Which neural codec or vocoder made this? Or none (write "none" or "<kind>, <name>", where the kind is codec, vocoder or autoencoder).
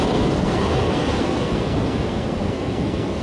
codec, SNAC